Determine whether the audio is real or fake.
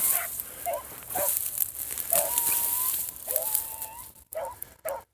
real